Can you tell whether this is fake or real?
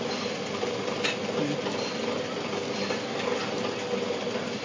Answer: real